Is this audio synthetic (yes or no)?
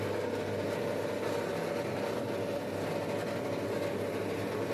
no